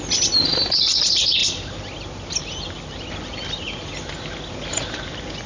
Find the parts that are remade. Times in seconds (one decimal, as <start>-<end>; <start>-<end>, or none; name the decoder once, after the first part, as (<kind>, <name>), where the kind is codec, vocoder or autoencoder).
none